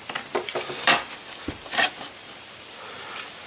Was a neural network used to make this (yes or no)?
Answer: yes